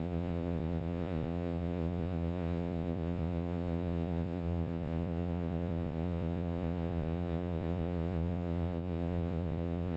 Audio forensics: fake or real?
fake